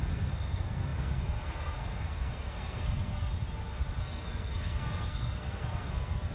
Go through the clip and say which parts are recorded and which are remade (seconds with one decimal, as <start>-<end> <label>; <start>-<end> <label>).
0.0-3.3 remade; 3.3-4.0 recorded; 4.0-6.3 remade